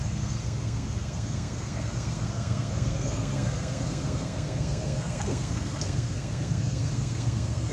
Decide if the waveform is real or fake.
fake